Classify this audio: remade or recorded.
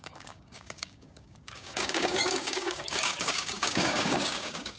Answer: remade